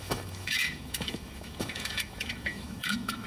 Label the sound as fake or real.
fake